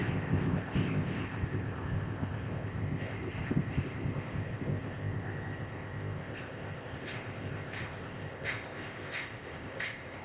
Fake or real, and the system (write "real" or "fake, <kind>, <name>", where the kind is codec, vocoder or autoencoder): fake, codec, ZipCodec